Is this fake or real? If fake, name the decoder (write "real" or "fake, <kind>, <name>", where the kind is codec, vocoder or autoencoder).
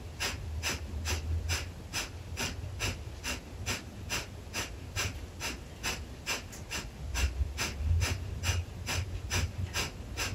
real